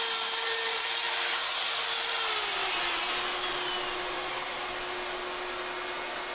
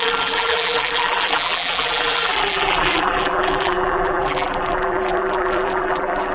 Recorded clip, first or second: first